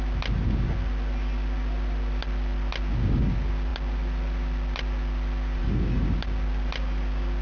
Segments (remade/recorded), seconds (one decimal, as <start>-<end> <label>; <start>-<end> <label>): 0.0-7.4 recorded